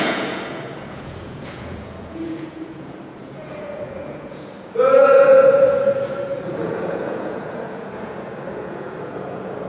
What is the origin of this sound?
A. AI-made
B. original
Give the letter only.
A